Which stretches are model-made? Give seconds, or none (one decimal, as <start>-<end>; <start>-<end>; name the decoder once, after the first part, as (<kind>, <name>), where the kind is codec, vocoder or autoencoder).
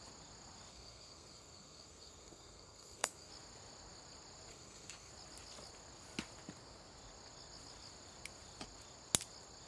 0.7-3.3 (codec, SNAC); 4.5-5.1